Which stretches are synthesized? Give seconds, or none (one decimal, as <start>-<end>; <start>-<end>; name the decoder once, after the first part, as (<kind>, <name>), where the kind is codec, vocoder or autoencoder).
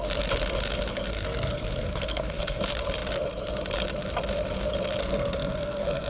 0.9-2.6 (codec, SNAC); 5.0-6.1